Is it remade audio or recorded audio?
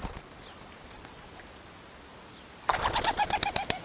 recorded